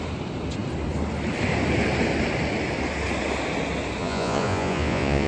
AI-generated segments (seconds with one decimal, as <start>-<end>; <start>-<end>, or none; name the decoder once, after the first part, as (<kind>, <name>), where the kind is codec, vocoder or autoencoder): 4.0-5.3 (vocoder, Vocos)